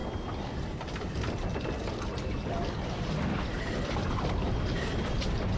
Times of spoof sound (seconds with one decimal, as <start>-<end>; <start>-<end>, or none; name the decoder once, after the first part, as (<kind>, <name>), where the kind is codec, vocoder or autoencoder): 0.0-5.6 (vocoder, BigVGAN v2)